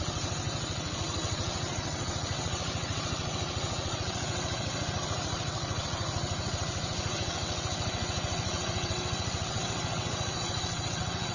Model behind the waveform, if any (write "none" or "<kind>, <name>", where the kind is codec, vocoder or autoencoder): vocoder, WaveNeXt